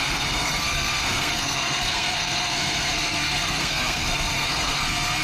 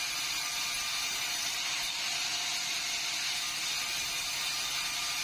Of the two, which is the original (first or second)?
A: second